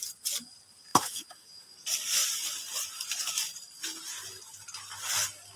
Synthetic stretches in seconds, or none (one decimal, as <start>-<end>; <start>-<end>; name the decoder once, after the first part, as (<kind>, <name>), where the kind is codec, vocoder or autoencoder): 0.9-1.5 (autoencoder, DAC-VAE)